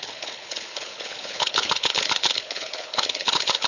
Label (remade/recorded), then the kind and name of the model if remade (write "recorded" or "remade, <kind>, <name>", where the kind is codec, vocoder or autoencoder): remade, codec, HILCodec